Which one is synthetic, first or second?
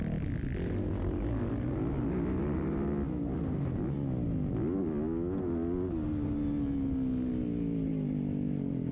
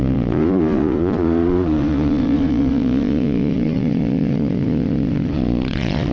second